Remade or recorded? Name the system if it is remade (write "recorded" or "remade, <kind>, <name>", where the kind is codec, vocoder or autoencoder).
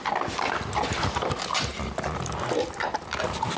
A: recorded